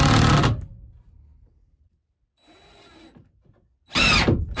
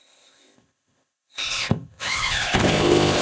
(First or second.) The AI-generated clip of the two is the second